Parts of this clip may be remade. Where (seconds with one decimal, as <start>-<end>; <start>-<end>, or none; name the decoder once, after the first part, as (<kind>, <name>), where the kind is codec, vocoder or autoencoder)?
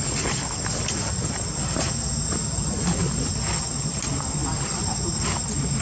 none